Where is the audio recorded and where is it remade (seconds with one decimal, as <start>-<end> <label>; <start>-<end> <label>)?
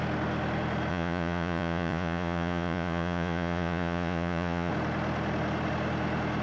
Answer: 0.0-0.9 recorded; 0.9-4.7 remade; 4.7-6.4 recorded